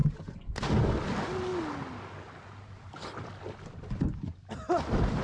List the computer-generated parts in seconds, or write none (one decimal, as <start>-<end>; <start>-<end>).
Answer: none